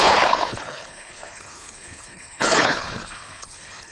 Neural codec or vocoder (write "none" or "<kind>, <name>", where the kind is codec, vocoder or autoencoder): codec, HILCodec